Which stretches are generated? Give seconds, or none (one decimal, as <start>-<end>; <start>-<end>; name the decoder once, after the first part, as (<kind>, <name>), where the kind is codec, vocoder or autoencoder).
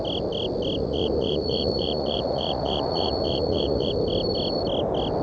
0.8-3.9 (vocoder, Vocos)